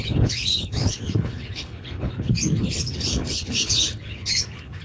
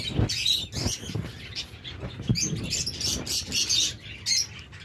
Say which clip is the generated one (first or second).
first